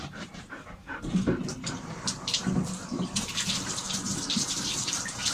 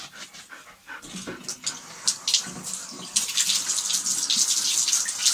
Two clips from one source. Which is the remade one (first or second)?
first